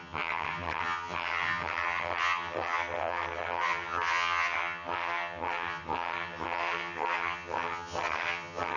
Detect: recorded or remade remade